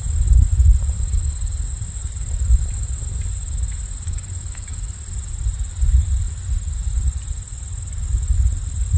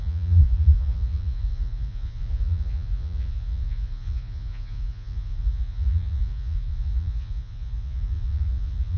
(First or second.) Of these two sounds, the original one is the first